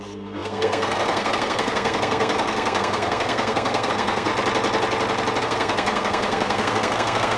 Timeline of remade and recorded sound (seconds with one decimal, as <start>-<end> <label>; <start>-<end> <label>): 0.0-4.3 remade; 4.3-5.4 recorded; 5.4-7.4 remade